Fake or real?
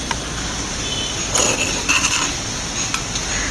real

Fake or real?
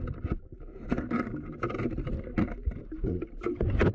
real